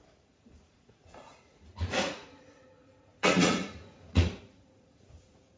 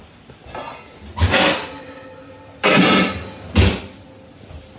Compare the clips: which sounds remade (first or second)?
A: first